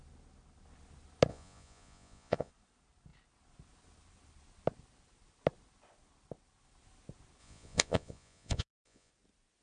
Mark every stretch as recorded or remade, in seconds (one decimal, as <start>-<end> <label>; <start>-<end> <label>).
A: 0.0-1.3 recorded; 1.3-2.5 remade; 2.5-7.4 recorded; 7.4-9.1 remade; 9.1-9.6 recorded